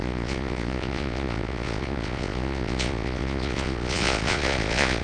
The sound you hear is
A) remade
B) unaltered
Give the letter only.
A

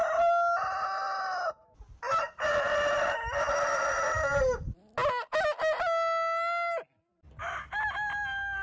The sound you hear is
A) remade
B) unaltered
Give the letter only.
B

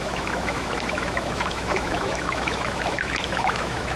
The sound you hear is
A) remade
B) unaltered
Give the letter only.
A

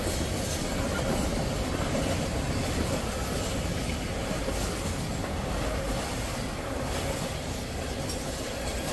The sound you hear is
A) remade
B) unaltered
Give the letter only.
B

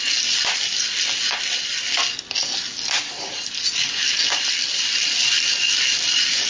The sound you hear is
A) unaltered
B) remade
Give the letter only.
A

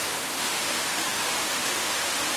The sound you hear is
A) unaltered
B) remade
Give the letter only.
B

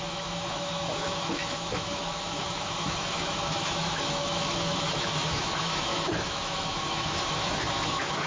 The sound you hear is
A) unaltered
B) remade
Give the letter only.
B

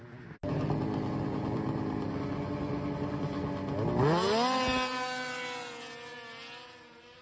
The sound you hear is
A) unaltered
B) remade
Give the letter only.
A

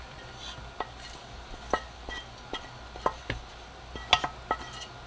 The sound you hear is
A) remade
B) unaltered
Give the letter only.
B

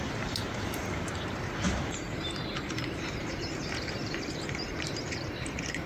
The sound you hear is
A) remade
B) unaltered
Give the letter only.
A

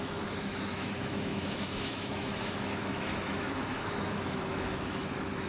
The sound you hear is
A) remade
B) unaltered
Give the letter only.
A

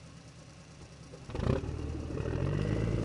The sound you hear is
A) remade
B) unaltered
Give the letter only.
A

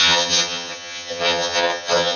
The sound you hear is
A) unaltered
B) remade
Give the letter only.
B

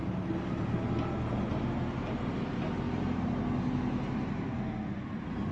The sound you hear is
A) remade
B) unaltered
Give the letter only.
B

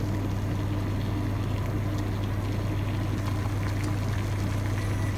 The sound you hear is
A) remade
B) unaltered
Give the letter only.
B